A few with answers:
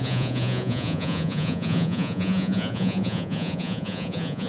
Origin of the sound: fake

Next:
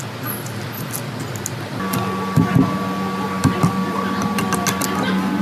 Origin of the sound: real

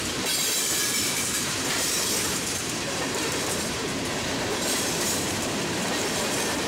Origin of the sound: fake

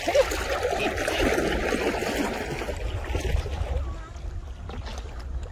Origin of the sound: real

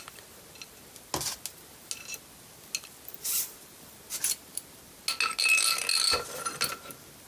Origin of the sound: real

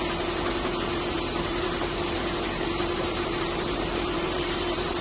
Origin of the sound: fake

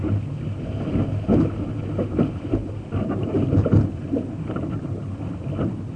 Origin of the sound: real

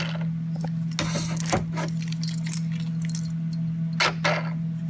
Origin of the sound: real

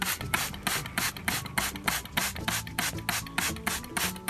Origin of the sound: real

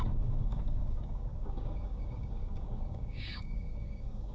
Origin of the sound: fake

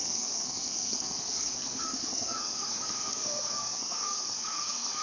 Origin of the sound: fake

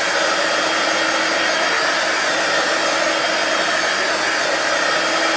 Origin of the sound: real